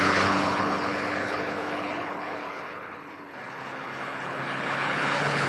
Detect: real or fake fake